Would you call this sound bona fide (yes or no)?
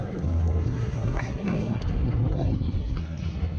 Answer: no